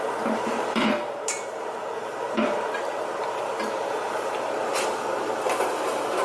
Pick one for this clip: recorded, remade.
remade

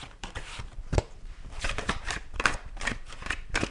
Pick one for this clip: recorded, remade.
remade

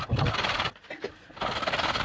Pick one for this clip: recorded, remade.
recorded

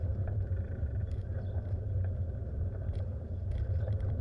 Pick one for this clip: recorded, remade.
remade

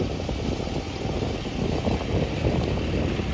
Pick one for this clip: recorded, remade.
recorded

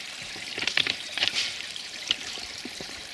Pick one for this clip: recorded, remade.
remade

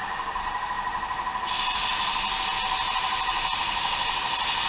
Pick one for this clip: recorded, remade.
recorded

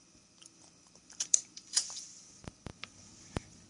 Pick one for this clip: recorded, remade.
remade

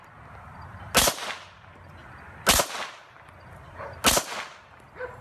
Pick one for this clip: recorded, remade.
recorded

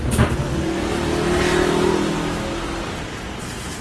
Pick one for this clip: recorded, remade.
recorded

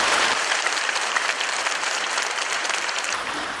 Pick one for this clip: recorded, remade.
remade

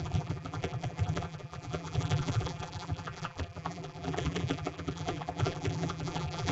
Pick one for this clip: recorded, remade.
remade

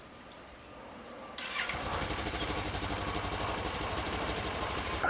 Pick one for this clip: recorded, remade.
remade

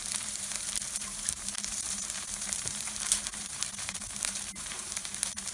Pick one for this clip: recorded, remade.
remade